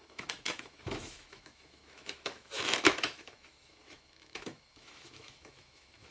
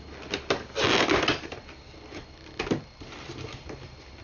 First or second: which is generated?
first